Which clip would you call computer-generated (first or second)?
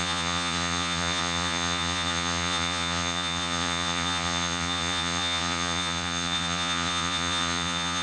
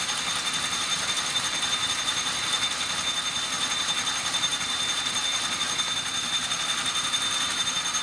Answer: first